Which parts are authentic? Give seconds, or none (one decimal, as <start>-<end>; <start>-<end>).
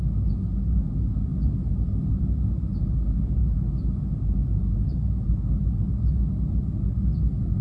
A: 0.0-1.3; 2.1-7.6